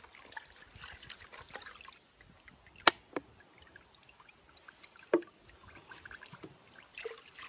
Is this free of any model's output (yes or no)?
yes